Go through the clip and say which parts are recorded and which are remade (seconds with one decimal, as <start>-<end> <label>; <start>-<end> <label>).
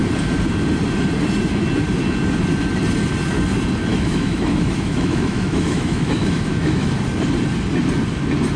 0.0-3.9 recorded; 3.9-6.9 remade; 6.9-8.6 recorded